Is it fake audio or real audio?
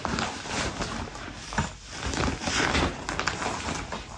real